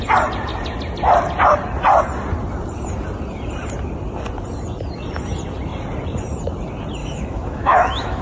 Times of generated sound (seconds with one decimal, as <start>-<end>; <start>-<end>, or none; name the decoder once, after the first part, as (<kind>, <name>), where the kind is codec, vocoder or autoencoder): 7.0-8.2 (autoencoder, DAC-VAE)